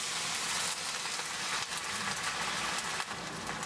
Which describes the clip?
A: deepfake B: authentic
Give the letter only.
B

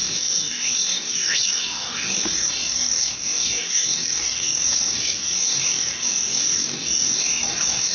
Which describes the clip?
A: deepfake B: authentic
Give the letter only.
A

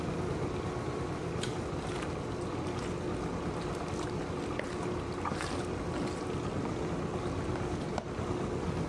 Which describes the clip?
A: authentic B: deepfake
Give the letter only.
A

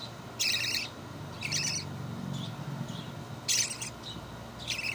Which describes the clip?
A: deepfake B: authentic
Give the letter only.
B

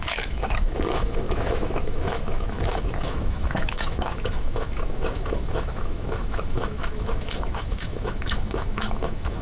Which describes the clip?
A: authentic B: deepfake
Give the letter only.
B